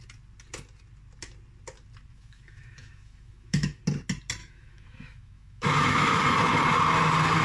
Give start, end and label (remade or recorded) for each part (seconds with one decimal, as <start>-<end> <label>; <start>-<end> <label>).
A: 0.0-2.1 recorded; 2.1-3.8 remade; 3.8-4.4 recorded; 4.4-6.2 remade; 6.2-7.4 recorded